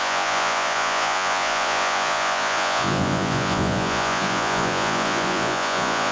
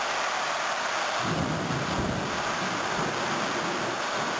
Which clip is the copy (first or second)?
first